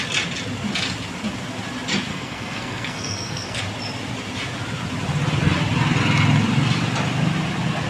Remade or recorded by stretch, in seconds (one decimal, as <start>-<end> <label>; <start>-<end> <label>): 0.0-2.1 recorded; 2.1-3.6 remade; 3.6-7.9 recorded